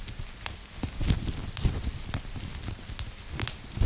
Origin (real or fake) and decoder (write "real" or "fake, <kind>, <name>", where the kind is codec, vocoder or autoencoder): real